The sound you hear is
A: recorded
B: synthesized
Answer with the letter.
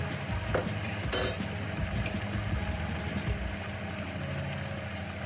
A